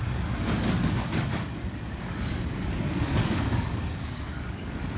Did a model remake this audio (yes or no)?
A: yes